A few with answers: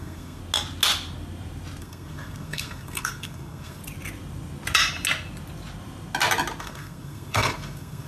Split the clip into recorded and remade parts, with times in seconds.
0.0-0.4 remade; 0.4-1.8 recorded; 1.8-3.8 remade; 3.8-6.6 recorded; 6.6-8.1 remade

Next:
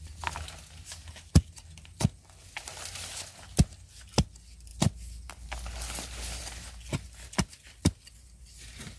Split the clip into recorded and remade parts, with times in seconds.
0.0-9.0 recorded